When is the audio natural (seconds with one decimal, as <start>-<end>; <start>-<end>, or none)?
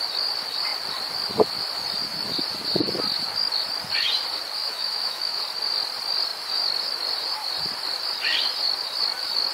0.0-4.6; 5.4-9.5